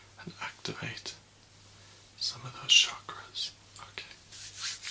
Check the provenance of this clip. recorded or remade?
recorded